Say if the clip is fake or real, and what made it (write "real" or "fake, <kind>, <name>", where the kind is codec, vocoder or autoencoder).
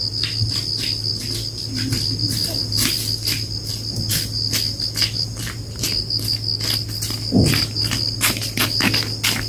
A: real